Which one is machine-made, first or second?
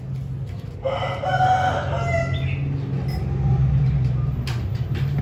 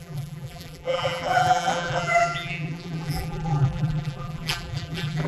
second